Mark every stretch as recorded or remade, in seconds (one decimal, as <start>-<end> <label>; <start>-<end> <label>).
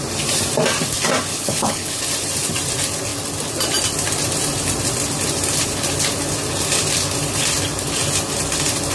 0.0-1.3 recorded; 1.3-2.0 remade; 2.0-8.9 recorded